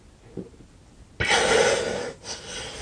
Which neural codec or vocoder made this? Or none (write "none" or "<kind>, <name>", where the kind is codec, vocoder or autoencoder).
none